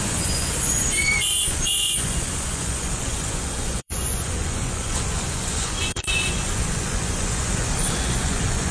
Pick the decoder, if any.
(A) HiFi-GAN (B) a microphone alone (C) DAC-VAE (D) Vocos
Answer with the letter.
D